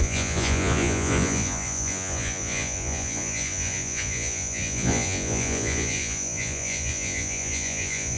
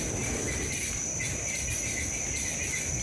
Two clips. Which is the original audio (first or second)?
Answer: second